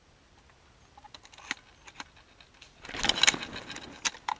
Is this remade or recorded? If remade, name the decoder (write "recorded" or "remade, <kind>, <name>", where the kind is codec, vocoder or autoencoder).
recorded